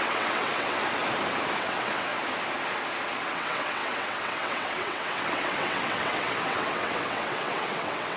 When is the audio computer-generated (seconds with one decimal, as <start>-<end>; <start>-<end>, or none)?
0.0-0.8; 1.6-2.1; 3.3-8.2